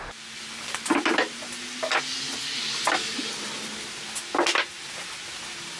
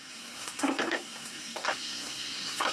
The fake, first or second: second